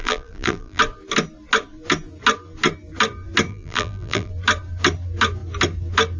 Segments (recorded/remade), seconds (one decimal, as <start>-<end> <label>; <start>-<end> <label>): 0.0-0.8 remade; 0.8-3.5 recorded; 3.5-4.3 remade; 4.3-6.2 recorded